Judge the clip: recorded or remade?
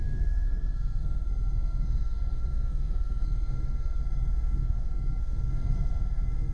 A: remade